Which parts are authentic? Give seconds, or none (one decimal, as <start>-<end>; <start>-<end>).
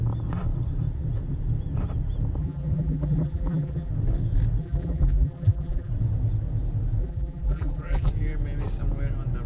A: 0.0-2.4; 3.9-4.6; 5.9-7.0; 8.1-9.5